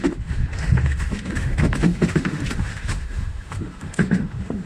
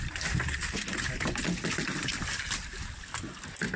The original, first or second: second